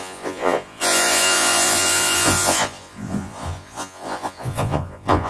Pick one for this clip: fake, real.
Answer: fake